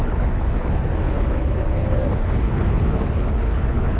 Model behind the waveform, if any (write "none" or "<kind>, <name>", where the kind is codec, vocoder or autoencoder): codec, HILCodec